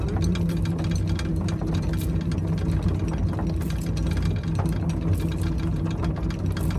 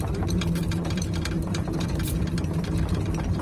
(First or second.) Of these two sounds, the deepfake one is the second